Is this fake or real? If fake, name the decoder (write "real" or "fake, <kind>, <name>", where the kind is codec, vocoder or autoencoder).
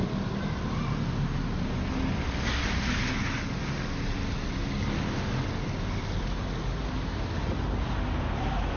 real